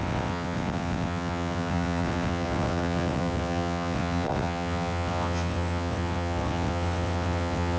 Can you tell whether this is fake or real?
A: fake